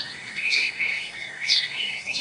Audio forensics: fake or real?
fake